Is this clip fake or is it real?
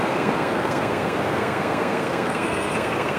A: fake